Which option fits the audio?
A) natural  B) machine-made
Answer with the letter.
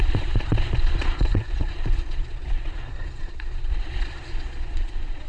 B